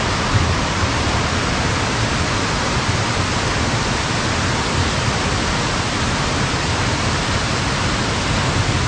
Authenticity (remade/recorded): recorded